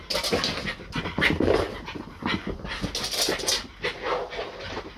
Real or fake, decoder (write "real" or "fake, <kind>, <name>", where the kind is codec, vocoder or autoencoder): real